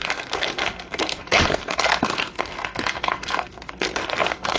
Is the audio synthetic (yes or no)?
yes